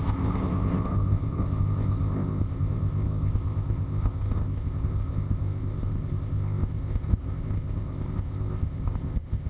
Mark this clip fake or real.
fake